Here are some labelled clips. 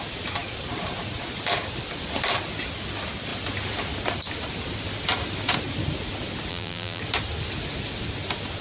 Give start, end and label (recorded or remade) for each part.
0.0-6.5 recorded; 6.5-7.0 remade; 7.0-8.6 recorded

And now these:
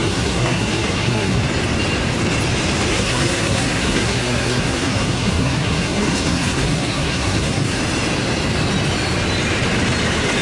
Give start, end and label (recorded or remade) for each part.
0.0-1.4 remade; 1.4-2.9 recorded; 2.9-7.8 remade; 7.8-10.4 recorded

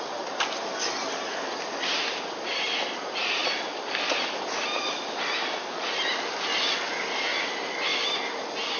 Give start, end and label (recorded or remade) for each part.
0.0-3.4 recorded; 3.4-6.5 remade; 6.5-8.8 recorded

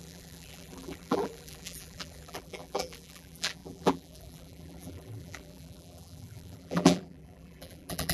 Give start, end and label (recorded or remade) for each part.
0.0-8.1 remade

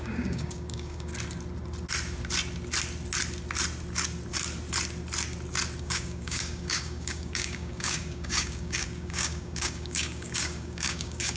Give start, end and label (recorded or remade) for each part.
0.0-1.1 remade; 1.1-5.8 recorded; 5.8-11.4 remade

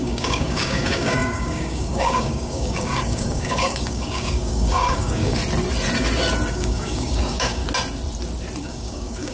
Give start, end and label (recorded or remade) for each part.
0.0-5.4 remade; 5.4-6.5 recorded; 6.5-7.6 remade; 7.6-8.6 recorded; 8.6-9.3 remade